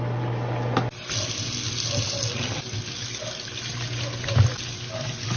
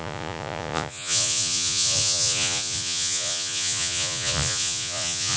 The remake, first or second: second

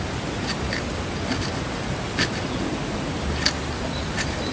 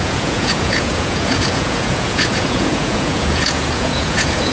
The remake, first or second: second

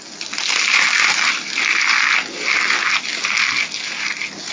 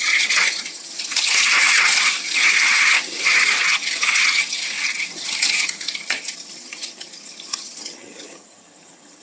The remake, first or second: second